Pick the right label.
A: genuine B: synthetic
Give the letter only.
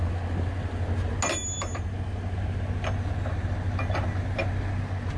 A